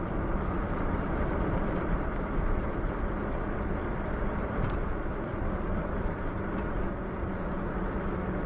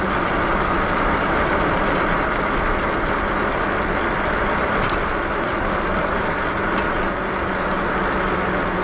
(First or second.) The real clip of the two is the second